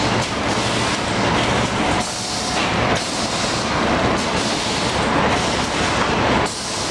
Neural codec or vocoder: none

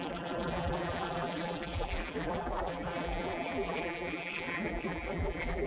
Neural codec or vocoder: vocoder, BigVGAN v2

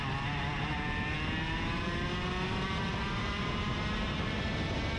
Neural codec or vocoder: none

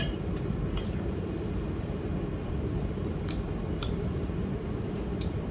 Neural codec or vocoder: vocoder, BigVGAN v2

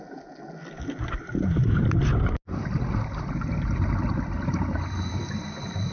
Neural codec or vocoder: none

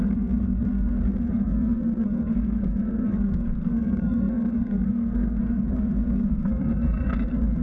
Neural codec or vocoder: codec, SNAC